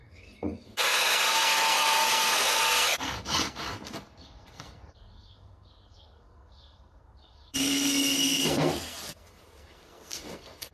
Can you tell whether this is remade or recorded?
remade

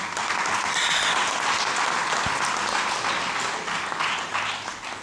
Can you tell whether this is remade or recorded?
recorded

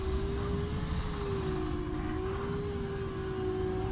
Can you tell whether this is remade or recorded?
recorded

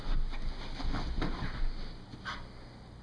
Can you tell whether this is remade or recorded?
recorded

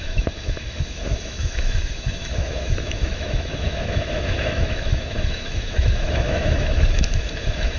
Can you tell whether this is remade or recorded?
remade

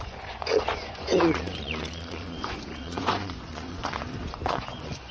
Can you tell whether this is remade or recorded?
remade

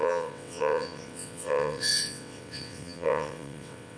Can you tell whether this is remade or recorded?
remade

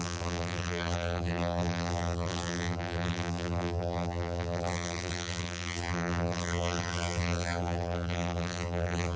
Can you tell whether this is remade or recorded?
remade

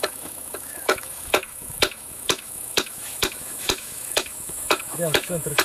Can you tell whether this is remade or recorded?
remade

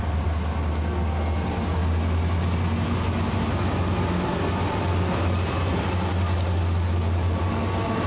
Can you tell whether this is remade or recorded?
recorded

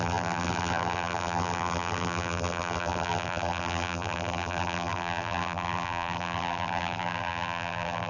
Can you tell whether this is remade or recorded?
remade